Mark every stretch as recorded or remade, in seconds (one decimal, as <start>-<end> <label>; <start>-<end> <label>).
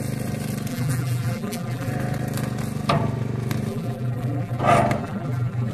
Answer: 0.0-0.7 recorded; 0.7-1.9 remade; 1.9-3.7 recorded; 3.7-4.6 remade; 4.6-5.0 recorded; 5.0-5.7 remade